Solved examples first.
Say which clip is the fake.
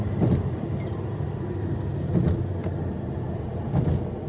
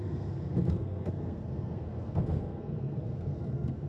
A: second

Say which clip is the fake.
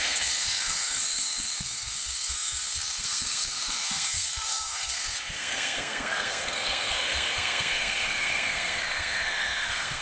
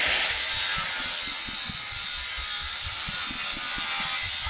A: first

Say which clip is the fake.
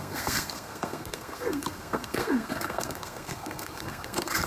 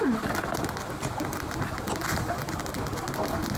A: first